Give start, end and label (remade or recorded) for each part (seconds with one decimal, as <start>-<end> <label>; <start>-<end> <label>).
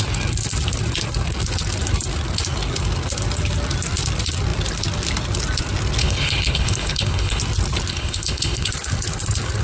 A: 0.0-6.0 recorded; 6.0-7.4 remade; 7.4-7.9 recorded; 7.9-8.7 remade; 8.7-9.6 recorded